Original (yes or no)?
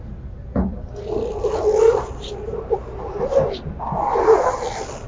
yes